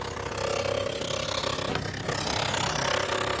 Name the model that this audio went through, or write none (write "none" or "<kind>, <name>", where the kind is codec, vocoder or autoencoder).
none